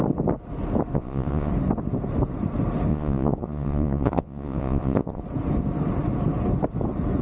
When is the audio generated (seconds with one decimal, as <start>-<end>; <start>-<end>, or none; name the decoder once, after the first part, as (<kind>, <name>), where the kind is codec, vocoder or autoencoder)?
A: 0.9-1.5 (vocoder, Vocos); 2.9-5.2